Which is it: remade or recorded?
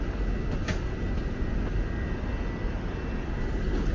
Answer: recorded